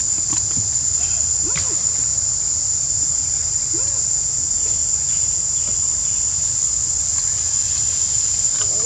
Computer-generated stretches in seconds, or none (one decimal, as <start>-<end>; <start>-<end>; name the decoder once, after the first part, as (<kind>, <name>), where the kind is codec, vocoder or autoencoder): 2.1-3.6 (vocoder, BigVGAN v2)